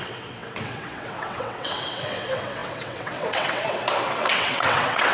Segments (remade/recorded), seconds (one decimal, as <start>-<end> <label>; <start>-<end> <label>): 0.0-5.1 remade